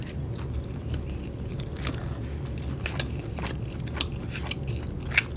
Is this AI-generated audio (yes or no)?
no